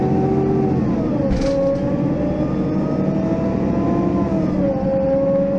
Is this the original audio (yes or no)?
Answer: yes